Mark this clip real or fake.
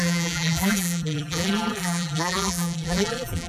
fake